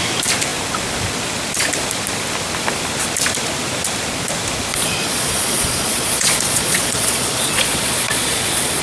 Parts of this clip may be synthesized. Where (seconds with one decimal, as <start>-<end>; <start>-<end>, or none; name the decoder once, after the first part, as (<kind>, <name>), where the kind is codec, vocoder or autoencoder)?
4.7-8.8 (vocoder, Vocos)